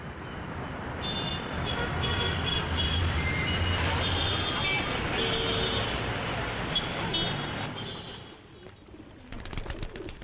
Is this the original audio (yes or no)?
yes